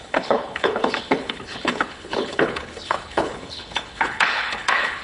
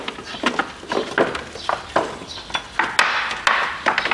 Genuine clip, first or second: second